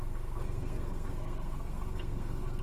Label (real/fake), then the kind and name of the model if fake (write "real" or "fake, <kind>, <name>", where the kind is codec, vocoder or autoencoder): fake, codec, SNAC